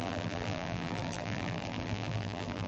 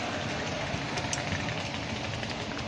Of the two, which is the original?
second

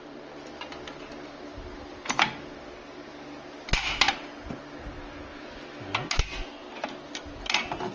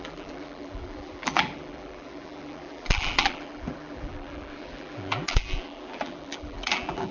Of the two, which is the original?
first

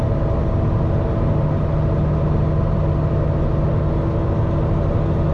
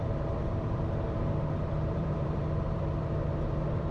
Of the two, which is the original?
first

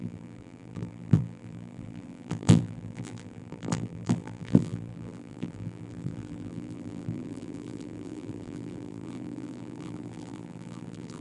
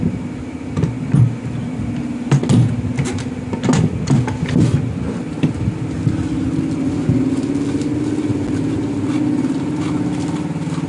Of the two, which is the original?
second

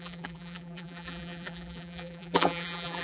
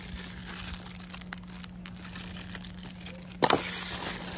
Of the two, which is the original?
second